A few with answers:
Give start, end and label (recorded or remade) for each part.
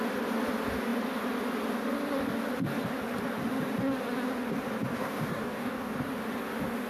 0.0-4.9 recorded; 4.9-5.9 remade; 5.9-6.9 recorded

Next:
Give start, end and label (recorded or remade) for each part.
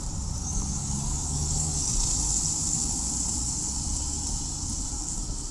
0.0-0.4 recorded; 0.4-1.9 remade; 1.9-5.5 recorded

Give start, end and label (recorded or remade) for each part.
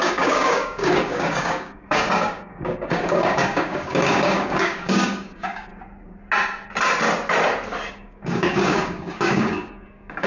0.0-5.7 remade; 5.7-7.9 recorded; 7.9-10.3 remade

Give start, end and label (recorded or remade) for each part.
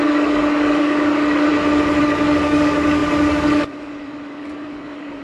0.0-1.5 remade; 1.5-2.0 recorded; 2.0-5.2 remade